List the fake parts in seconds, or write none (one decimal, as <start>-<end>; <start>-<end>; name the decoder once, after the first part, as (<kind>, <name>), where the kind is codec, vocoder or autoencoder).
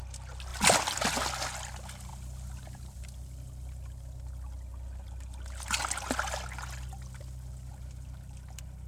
none